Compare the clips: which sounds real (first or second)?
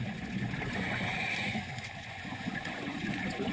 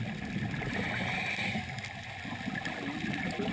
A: second